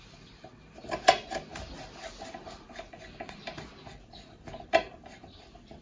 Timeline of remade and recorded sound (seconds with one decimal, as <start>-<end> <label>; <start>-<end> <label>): 0.0-5.8 recorded